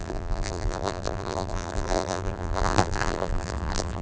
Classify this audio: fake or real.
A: fake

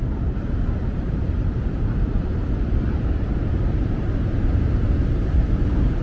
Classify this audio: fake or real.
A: fake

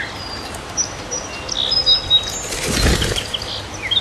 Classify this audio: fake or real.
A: real